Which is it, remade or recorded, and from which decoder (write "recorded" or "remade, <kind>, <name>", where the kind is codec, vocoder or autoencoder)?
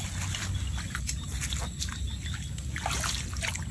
recorded